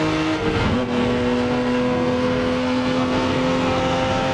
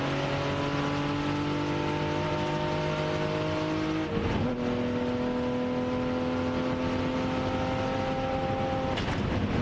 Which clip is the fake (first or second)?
first